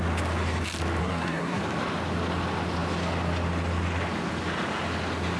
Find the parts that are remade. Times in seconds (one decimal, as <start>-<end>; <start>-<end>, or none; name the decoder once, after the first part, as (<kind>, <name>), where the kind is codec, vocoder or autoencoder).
1.0-1.6 (codec, SNAC)